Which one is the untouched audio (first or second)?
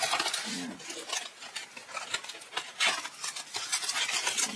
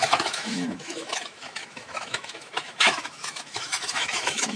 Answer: first